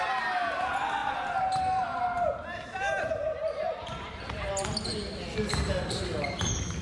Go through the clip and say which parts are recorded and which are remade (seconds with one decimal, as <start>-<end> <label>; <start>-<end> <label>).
0.0-1.0 recorded; 1.0-4.5 remade; 4.5-6.8 recorded